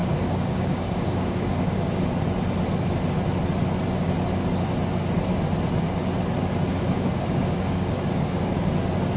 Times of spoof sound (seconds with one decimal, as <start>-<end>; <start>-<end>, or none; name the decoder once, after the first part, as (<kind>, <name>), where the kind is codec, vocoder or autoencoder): 0.0-2.0 (codec, DAC); 6.7-8.6